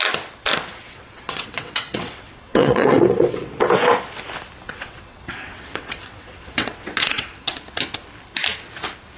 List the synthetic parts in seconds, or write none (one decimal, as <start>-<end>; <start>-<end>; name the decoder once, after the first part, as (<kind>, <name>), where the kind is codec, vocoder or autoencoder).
0.8-3.6 (vocoder, WaveNeXt); 4.7-7.5